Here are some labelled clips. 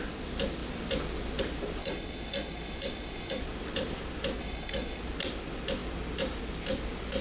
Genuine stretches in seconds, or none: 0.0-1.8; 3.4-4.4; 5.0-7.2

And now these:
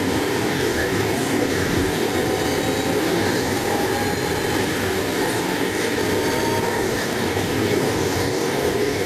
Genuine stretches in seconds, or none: 2.1-3.0; 3.9-4.6; 6.0-6.6

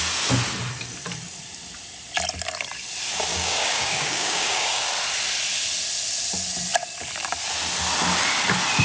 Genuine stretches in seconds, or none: 0.0-3.3; 4.8-8.8

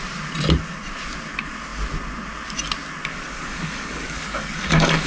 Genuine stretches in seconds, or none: 0.0-3.1

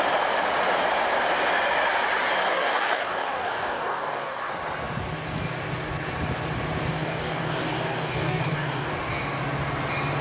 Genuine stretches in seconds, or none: 0.0-2.5; 4.5-6.9; 8.9-10.2